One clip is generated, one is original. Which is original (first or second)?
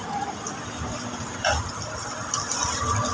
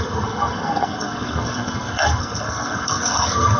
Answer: first